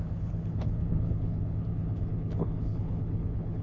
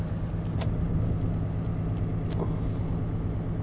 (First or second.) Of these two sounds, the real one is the second